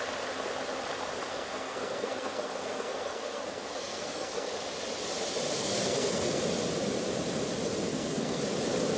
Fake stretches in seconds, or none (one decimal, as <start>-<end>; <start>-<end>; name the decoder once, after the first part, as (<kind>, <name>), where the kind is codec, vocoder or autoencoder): 1.3-4.5 (codec, SNAC); 5.6-6.4; 7.9-8.4